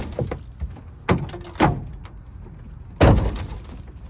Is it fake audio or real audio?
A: real